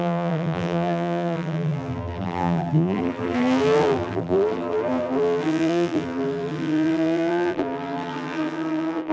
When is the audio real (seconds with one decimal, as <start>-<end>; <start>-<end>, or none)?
none